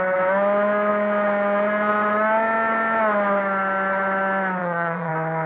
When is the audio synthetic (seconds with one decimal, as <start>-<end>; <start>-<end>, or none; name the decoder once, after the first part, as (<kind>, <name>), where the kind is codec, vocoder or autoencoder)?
4.6-5.1 (vocoder, Vocos)

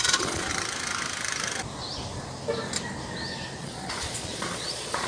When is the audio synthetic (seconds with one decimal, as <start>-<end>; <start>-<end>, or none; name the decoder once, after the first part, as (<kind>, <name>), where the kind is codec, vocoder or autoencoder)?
0.0-0.5 (vocoder, Vocos); 3.6-5.1